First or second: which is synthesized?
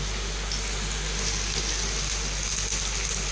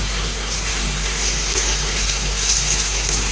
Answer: second